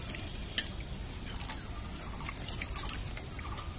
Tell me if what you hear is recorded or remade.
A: recorded